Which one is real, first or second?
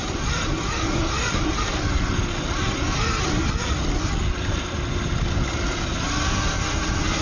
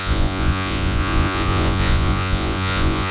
first